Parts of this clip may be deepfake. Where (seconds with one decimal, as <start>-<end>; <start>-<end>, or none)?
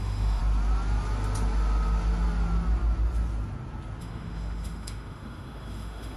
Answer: 0.0-0.4; 4.0-6.2